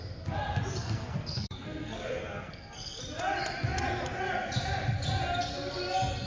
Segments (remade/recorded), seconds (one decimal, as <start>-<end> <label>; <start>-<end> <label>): 0.0-0.7 recorded; 0.7-3.0 remade; 3.0-6.3 recorded